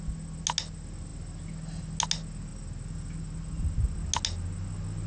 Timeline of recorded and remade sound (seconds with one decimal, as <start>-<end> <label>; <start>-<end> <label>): 0.0-5.1 recorded